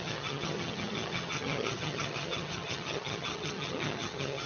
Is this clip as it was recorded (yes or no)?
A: no